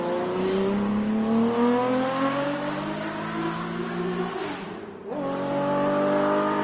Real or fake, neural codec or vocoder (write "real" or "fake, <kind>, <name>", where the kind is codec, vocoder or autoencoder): real